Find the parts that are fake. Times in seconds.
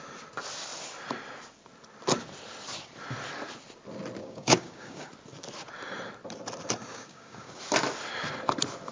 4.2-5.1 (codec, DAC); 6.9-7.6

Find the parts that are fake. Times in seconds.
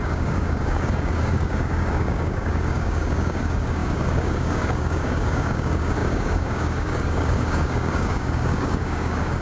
0.0-9.4 (codec, DAC)